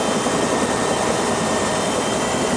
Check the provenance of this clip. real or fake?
fake